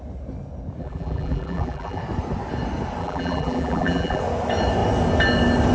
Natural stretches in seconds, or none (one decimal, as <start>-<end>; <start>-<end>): 0.0-0.8; 2.0-3.0; 4.2-5.7